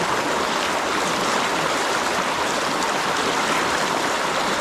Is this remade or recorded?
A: recorded